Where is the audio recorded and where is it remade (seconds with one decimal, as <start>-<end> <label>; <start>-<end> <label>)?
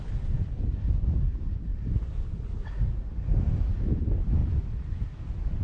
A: 0.0-1.7 recorded; 1.7-2.8 remade; 2.8-5.6 recorded